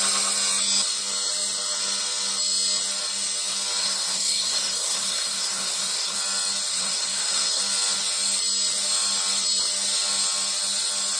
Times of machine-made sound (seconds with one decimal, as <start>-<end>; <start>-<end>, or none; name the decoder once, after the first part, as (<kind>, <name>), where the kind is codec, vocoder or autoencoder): 3.8-6.2 (codec, SNAC); 6.7-7.6